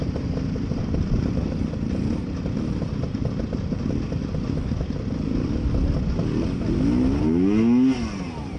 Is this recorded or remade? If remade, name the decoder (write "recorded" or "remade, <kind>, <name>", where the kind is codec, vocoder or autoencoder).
recorded